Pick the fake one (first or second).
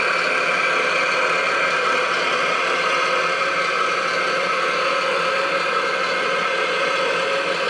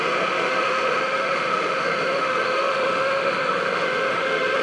second